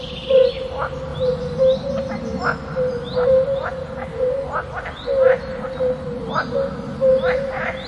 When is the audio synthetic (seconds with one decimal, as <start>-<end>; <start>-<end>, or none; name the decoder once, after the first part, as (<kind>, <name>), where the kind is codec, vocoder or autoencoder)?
none